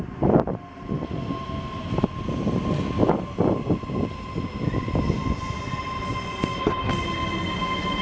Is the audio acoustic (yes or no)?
yes